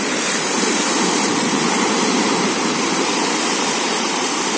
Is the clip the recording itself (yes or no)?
no